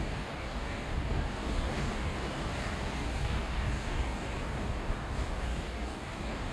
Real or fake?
fake